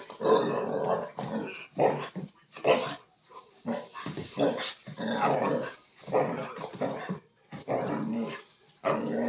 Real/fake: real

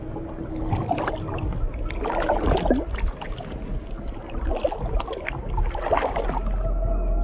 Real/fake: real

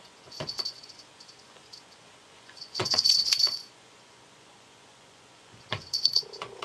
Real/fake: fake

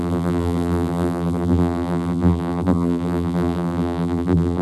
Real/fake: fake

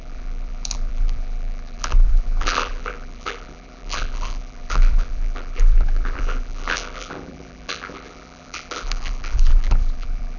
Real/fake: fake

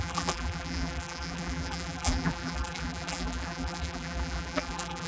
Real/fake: fake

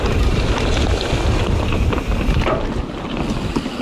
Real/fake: real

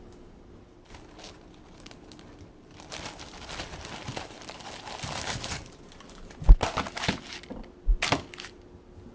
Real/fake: real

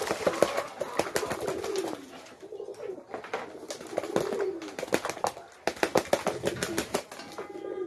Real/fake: real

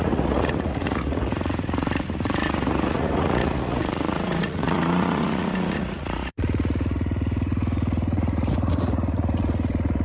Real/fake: fake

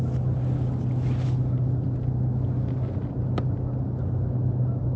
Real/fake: real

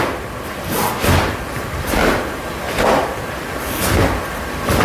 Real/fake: fake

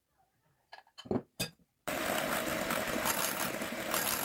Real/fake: fake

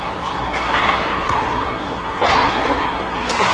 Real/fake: fake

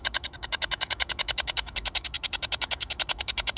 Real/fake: fake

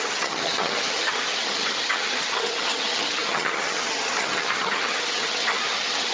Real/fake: fake